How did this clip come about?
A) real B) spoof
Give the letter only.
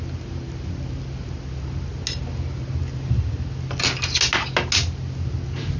A